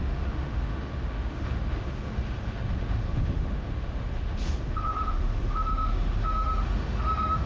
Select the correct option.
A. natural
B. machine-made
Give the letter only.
B